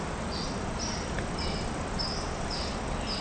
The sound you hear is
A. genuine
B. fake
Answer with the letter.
A